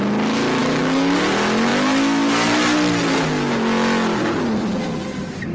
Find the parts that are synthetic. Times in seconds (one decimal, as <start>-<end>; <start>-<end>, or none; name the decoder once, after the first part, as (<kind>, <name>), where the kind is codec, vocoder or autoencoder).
0.6-1.2 (codec, DAC)